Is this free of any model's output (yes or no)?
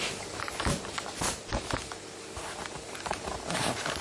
yes